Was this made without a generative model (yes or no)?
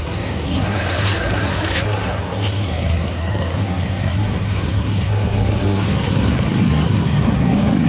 no